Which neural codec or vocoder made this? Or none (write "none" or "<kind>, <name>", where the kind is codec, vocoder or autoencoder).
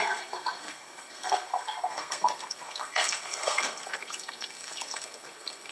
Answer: codec, SNAC